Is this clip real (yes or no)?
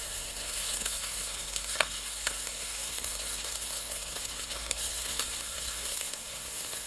no